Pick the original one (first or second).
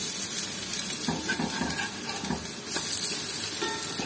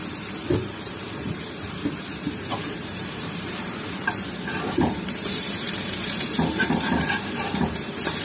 first